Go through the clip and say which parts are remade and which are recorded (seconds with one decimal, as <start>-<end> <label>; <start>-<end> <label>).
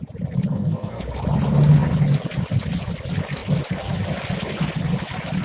0.0-0.5 recorded; 0.5-1.0 remade; 1.0-5.4 recorded